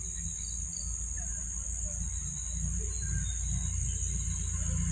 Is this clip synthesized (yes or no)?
no